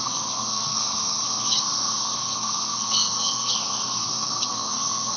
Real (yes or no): no